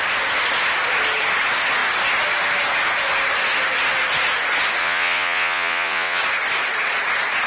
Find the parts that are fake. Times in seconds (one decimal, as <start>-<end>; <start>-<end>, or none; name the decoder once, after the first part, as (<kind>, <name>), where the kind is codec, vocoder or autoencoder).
4.8-6.2 (vocoder, Vocos)